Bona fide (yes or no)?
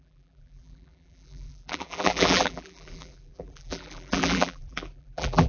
no